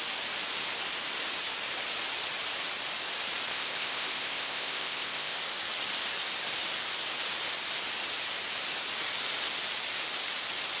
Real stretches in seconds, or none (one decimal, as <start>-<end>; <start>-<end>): 0.0-3.5; 5.4-10.8